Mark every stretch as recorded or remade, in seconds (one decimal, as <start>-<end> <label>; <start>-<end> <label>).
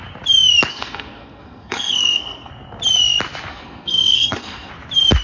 0.0-0.7 recorded; 0.7-2.5 remade; 2.5-3.5 recorded; 3.5-4.7 remade; 4.7-5.2 recorded